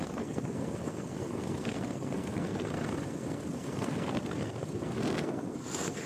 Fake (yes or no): yes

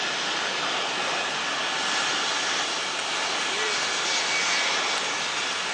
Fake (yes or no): no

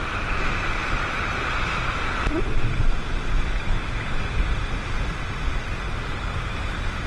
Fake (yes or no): no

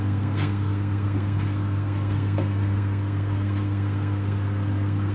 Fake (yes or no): yes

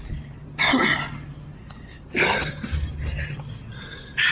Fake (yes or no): no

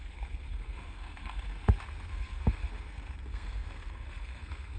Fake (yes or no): yes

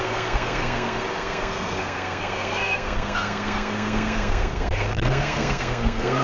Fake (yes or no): yes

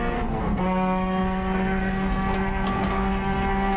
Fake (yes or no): yes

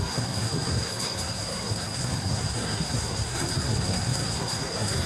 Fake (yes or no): yes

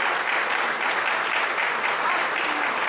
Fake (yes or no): no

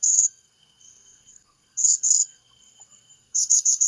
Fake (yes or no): yes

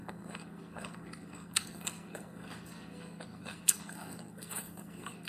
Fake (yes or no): yes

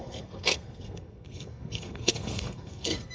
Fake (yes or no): yes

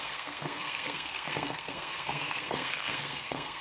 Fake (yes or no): yes